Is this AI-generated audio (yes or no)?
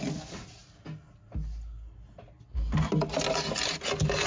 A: no